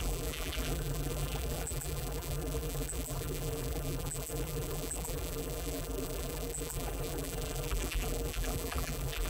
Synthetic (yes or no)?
yes